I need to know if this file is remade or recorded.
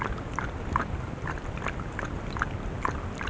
recorded